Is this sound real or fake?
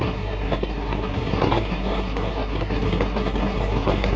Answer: fake